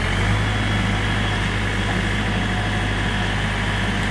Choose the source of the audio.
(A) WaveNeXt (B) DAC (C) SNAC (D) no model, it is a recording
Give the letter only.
D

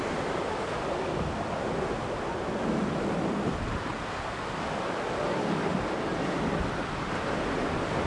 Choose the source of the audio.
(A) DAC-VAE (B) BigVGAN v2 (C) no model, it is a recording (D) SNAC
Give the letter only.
C